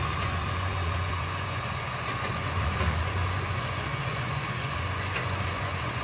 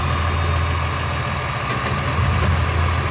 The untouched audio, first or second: second